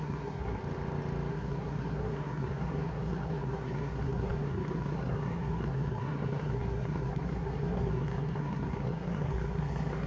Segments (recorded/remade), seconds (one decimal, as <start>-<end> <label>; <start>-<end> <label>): 0.0-0.6 remade; 0.6-1.3 recorded; 1.3-10.1 remade

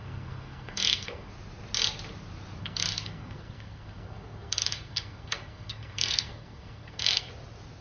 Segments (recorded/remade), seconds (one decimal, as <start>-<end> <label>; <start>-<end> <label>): 0.0-1.3 remade; 1.3-2.6 recorded; 2.6-7.3 remade; 7.3-7.8 recorded

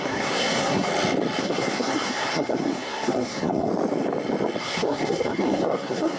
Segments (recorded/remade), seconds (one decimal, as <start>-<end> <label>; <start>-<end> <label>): 0.0-0.9 remade; 0.9-1.4 recorded; 1.4-3.7 remade; 3.7-4.6 recorded; 4.6-6.2 remade

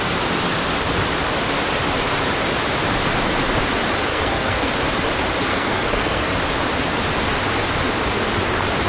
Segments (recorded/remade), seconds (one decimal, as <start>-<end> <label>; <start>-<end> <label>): 0.0-4.1 recorded; 4.1-4.7 remade; 4.7-5.5 recorded; 5.5-6.3 remade; 6.3-8.9 recorded

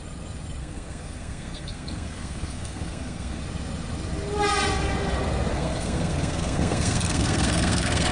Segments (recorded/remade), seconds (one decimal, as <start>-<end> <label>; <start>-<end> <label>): 0.0-0.6 recorded; 0.6-3.4 remade; 3.4-5.5 recorded; 5.5-8.1 remade

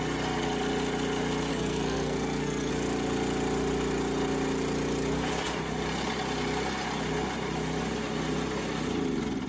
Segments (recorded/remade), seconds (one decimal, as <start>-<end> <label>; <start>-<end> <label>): 0.0-1.5 recorded; 1.5-2.7 remade; 2.7-9.5 recorded